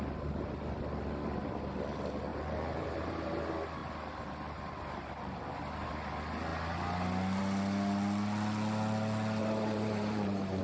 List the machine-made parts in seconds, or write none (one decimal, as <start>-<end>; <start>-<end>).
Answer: 2.3-3.4; 3.8-5.9; 9.4-10.6